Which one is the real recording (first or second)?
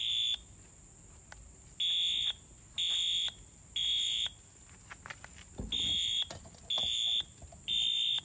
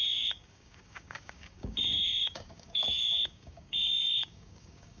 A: first